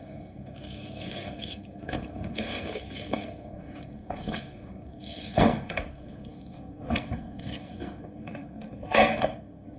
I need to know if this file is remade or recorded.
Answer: remade